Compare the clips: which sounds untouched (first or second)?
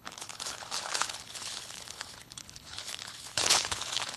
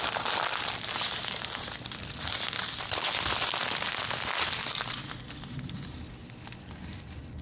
second